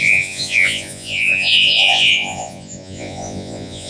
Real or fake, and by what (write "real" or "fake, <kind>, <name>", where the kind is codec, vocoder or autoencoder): fake, vocoder, Vocos